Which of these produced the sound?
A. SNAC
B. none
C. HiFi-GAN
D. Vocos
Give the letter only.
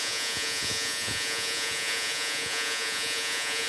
D